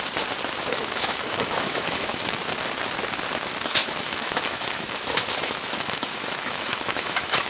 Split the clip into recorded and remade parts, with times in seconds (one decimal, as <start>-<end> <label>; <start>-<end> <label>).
0.0-0.7 recorded; 0.7-2.4 remade; 2.4-3.8 recorded; 3.8-7.5 remade